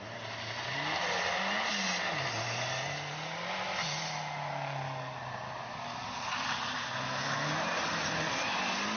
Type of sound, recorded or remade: recorded